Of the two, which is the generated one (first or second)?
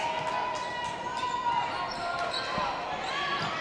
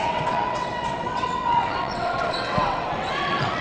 second